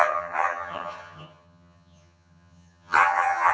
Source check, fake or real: fake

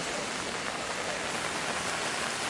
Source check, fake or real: real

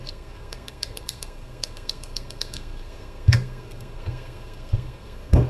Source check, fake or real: fake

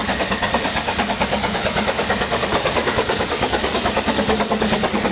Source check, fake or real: fake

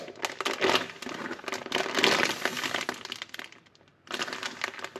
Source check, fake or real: real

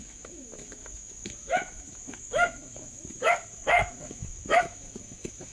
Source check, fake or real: fake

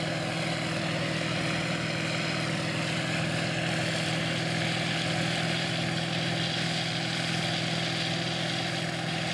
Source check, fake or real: real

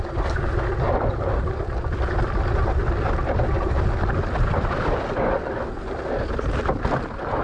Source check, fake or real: real